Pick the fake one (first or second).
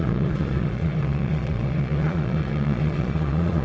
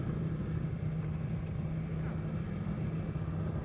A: first